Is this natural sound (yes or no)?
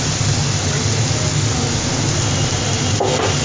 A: yes